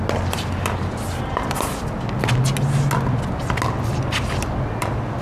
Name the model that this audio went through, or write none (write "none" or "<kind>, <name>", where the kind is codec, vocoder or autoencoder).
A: none